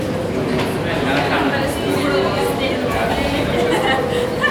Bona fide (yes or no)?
yes